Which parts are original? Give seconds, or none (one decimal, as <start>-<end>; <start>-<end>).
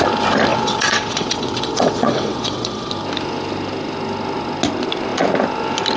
0.0-0.5; 2.9-6.0